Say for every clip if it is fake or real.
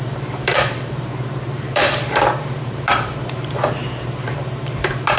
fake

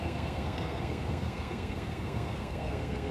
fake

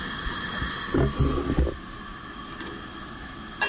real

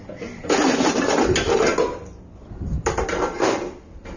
real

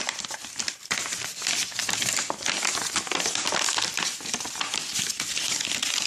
real